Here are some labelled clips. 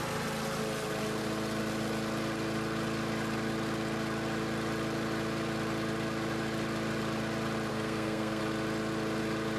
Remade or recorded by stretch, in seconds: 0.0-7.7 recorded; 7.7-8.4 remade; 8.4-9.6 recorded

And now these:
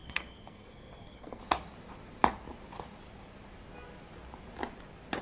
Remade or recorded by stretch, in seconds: 0.0-1.4 remade; 1.4-5.2 recorded

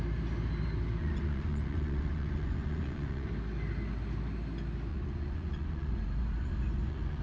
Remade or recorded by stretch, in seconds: 0.0-1.0 recorded; 1.0-3.3 remade; 3.3-4.9 recorded; 4.9-7.2 remade